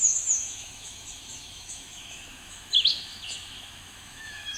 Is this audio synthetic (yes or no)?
yes